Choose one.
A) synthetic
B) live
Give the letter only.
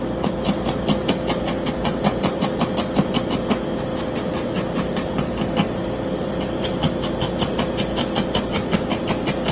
B